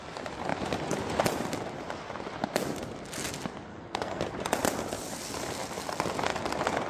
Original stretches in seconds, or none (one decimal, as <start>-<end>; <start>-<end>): 0.0-3.7; 4.2-6.9